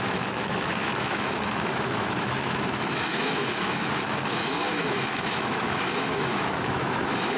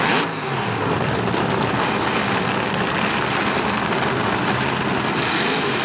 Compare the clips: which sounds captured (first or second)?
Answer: second